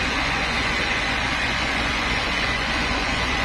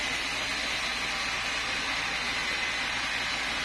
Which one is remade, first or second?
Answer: first